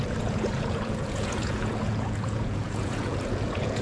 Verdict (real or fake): fake